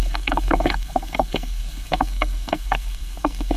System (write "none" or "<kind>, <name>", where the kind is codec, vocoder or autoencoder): codec, SNAC